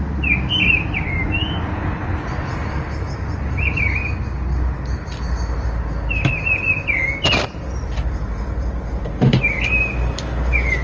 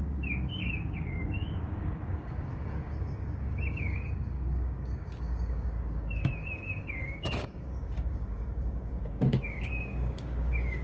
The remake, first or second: second